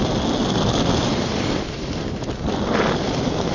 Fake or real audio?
real